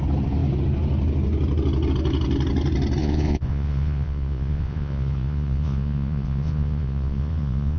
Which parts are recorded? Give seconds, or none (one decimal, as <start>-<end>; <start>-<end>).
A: 0.0-3.0